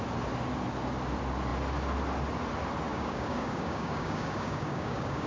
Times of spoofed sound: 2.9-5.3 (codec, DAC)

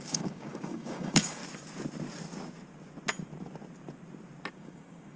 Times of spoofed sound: 0.0-1.4 (codec, DAC); 4.5-5.2

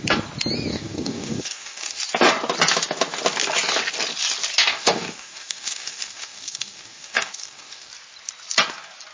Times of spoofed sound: 0.7-2.0 (codec, DAC); 4.7-7.9

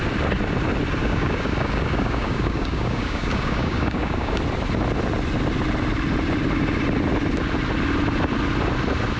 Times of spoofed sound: 1.0-4.4 (codec, DAC)

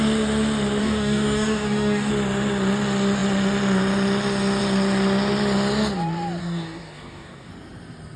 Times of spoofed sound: 0.8-2.1 (codec, DAC); 6.4-7.5